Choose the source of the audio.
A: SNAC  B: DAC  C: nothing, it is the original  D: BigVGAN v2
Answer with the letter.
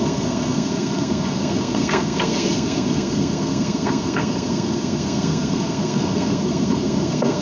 A